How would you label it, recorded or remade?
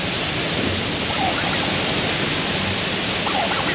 recorded